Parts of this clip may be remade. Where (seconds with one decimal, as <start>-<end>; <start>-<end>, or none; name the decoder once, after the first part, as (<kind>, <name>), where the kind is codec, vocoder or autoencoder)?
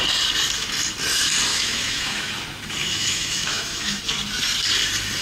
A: 1.5-2.3 (autoencoder, DAC-VAE); 2.8-4.0